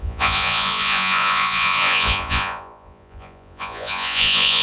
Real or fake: fake